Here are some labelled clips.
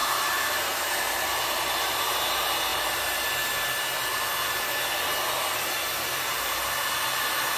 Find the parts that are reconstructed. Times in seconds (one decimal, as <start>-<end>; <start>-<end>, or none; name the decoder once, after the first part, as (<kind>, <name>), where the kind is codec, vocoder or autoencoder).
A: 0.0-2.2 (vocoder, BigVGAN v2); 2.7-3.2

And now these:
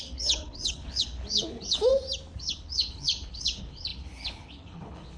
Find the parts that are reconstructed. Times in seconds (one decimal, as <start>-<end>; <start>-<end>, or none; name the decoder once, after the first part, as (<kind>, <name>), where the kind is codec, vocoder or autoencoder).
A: 0.0-1.9 (codec, HILCodec); 2.4-5.2

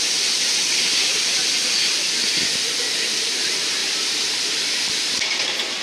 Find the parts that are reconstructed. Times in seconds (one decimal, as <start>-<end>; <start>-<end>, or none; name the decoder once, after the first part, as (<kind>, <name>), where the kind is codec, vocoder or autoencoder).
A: none